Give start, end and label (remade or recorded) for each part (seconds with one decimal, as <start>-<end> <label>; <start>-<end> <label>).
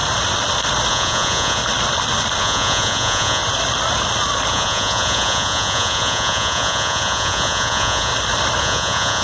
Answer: 0.0-0.9 recorded; 0.9-1.6 remade; 1.6-2.4 recorded; 2.4-3.4 remade; 3.4-4.5 recorded; 4.5-8.1 remade; 8.1-8.6 recorded; 8.6-9.2 remade